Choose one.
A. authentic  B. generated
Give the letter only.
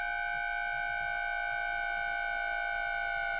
A